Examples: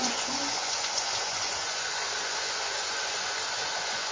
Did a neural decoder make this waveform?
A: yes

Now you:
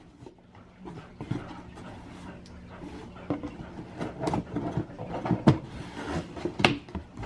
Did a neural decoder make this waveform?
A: no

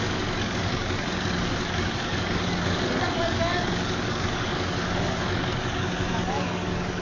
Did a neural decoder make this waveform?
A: yes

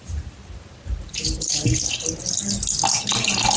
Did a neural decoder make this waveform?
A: no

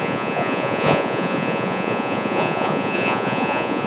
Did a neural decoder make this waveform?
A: yes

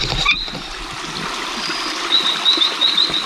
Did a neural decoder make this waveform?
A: no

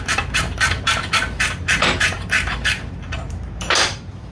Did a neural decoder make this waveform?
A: yes